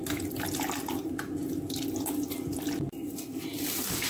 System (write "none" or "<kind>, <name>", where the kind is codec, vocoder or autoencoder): none